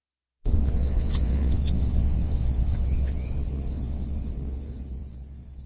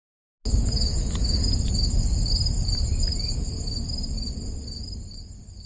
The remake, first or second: first